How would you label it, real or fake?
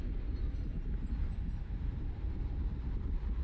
real